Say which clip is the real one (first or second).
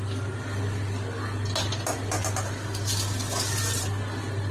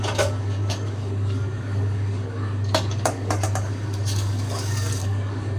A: first